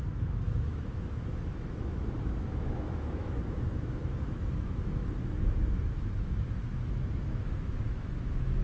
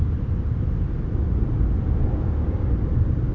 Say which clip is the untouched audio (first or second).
second